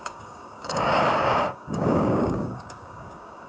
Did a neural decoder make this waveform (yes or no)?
yes